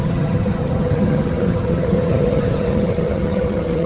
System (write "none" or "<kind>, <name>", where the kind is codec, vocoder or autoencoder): vocoder, HiFi-GAN